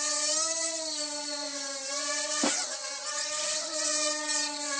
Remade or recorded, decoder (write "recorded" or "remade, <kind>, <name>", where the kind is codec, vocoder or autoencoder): recorded